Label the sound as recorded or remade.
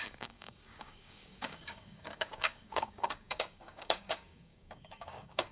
remade